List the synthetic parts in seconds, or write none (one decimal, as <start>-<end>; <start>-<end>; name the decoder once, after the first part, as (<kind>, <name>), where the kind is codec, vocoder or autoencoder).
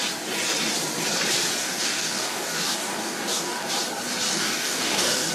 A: 1.6-3.7 (codec, DAC); 4.3-5.3